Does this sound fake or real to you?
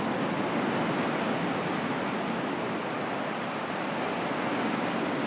real